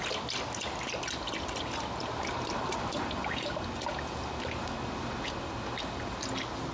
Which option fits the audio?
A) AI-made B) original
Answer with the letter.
B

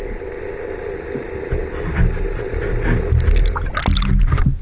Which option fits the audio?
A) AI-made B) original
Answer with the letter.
B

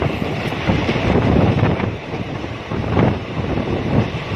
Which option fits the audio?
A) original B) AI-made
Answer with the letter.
B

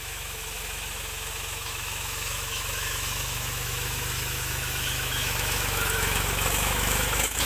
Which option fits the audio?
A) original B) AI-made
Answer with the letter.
B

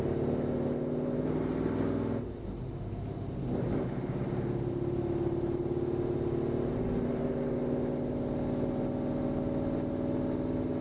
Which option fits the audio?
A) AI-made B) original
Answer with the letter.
B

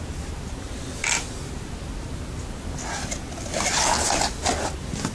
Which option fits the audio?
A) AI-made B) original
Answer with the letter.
B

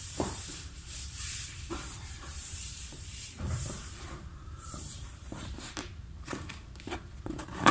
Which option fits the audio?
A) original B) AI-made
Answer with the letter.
B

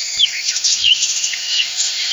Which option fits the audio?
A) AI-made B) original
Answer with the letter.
A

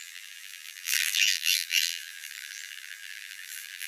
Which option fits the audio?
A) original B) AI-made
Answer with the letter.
B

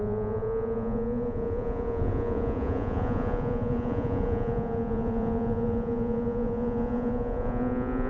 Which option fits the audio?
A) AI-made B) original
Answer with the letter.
A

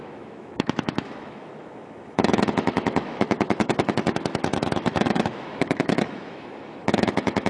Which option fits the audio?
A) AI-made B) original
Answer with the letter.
A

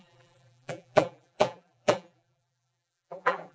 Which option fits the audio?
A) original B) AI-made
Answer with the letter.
B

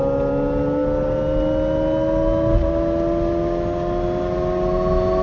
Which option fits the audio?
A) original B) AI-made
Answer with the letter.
A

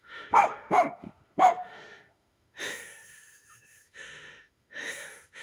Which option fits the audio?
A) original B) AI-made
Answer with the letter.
B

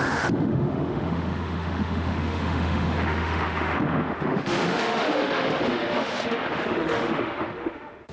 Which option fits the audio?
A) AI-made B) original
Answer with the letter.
A